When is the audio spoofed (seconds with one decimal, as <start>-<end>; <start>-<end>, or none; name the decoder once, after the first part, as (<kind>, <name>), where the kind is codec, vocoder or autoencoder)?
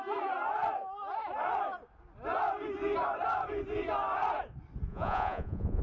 4.9-5.8 (vocoder, Vocos)